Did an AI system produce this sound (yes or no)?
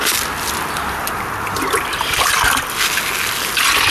no